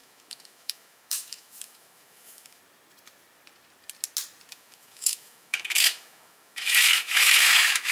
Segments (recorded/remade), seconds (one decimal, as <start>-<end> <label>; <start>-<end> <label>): 0.0-2.6 remade; 2.6-4.5 recorded; 4.5-7.9 remade